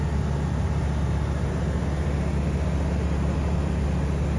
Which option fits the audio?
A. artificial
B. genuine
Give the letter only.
B